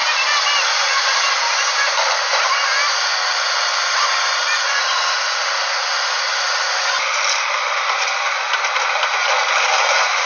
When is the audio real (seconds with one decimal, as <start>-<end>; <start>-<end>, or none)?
0.0-3.1; 8.2-10.3